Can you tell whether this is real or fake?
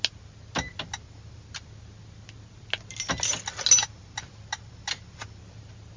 real